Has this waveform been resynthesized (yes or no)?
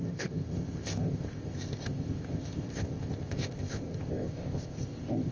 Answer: yes